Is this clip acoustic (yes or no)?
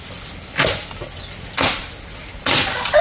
yes